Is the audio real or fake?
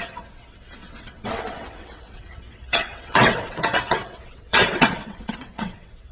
fake